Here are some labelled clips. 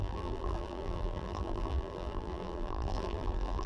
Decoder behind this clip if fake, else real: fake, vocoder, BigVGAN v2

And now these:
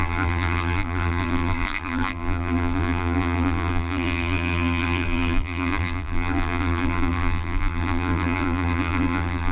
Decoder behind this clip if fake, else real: fake, vocoder, BigVGAN v2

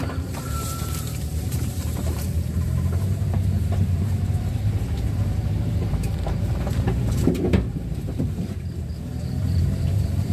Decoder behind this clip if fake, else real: fake, vocoder, BigVGAN v2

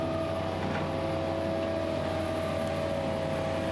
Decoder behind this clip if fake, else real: real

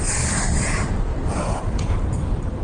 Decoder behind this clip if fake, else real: fake, vocoder, BigVGAN v2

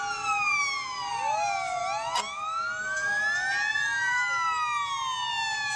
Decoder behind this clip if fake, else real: real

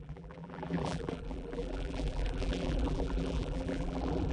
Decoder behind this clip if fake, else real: fake, vocoder, BigVGAN v2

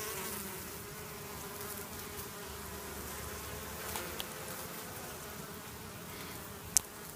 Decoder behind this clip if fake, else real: real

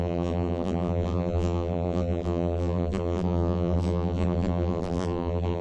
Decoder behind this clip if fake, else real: fake, vocoder, BigVGAN v2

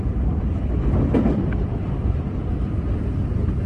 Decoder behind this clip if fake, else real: fake, vocoder, BigVGAN v2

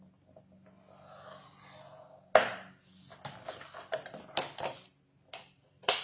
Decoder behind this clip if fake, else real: real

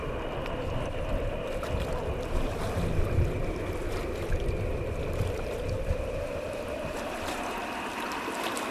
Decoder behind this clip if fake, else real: fake, vocoder, BigVGAN v2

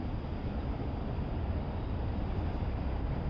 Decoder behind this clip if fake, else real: fake, vocoder, BigVGAN v2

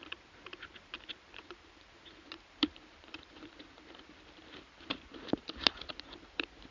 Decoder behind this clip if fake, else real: fake, vocoder, BigVGAN v2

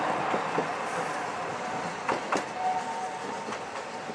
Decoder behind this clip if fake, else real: real